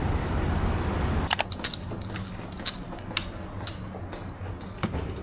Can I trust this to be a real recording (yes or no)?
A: yes